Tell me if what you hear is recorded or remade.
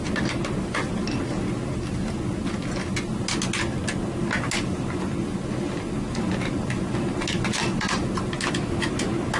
recorded